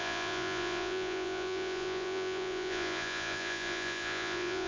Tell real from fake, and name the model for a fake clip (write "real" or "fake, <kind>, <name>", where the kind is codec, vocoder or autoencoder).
fake, vocoder, Vocos